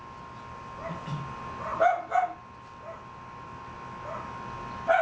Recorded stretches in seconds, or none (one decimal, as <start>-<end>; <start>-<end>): 0.0-5.0